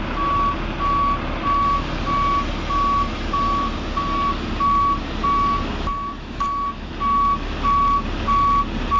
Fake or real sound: real